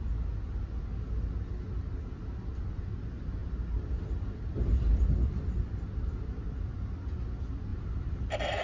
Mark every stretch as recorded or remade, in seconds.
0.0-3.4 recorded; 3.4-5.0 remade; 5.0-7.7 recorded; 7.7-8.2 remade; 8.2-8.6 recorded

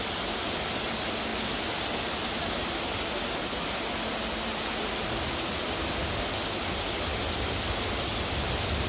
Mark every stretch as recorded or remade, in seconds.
0.0-8.9 recorded

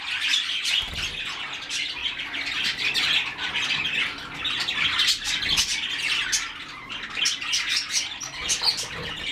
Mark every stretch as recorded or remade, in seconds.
0.0-2.0 recorded; 2.0-3.5 remade; 3.5-9.3 recorded

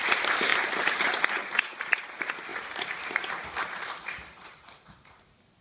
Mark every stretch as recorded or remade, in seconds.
0.0-5.6 remade

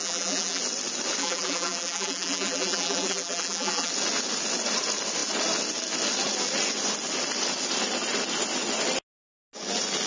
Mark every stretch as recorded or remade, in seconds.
0.0-0.6 remade; 0.6-1.2 recorded; 1.2-3.9 remade; 3.9-10.1 recorded

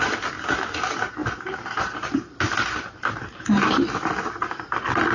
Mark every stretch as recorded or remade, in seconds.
0.0-1.2 recorded; 1.2-4.3 remade; 4.3-5.1 recorded

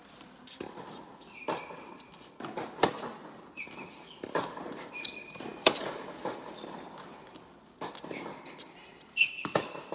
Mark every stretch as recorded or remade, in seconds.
0.0-9.9 recorded